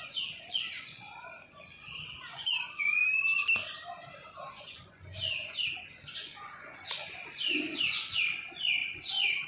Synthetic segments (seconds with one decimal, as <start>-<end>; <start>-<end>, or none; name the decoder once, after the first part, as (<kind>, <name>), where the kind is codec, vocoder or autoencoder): 0.0-3.0 (vocoder, Vocos); 4.5-9.5